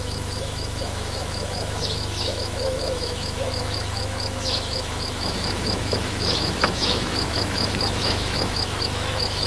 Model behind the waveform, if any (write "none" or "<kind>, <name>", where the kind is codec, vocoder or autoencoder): autoencoder, DAC-VAE